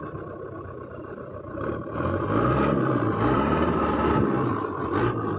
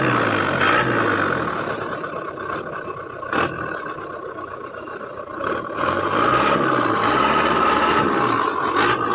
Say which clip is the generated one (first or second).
first